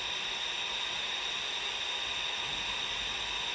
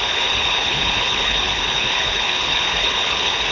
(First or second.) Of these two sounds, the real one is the first